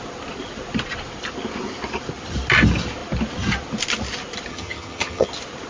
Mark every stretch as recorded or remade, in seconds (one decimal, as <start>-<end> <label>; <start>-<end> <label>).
0.0-4.5 recorded; 4.5-5.3 remade; 5.3-5.7 recorded